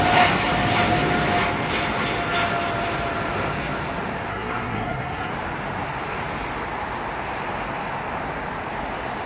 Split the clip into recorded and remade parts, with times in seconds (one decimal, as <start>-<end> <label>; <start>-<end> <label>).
0.0-4.3 recorded; 4.3-5.3 remade; 5.3-9.3 recorded

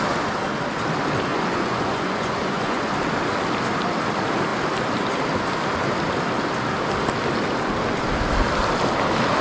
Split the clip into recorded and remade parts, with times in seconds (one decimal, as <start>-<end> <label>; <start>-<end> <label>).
0.0-1.3 recorded; 1.3-2.9 remade; 2.9-9.4 recorded

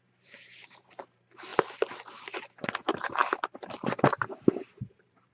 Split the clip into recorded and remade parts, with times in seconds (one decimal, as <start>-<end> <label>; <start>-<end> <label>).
0.0-1.5 remade; 1.5-2.8 recorded; 2.8-5.3 remade

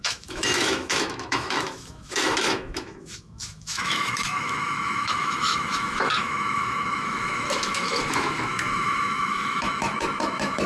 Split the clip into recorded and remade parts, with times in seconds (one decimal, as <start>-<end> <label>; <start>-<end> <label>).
0.0-10.7 remade

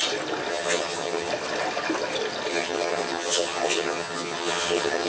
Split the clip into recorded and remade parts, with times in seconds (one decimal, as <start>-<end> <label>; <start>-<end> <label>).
0.0-0.5 recorded; 0.5-1.3 remade; 1.3-2.5 recorded; 2.5-5.1 remade

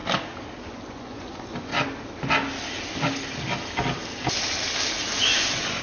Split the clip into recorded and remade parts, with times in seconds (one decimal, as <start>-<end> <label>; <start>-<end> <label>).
0.0-0.7 recorded; 0.7-1.7 remade; 1.7-5.2 recorded; 5.2-5.8 remade

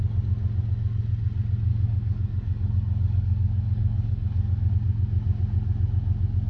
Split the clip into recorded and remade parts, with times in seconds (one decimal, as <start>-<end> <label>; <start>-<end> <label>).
0.0-1.7 recorded; 1.7-4.7 remade; 4.7-6.5 recorded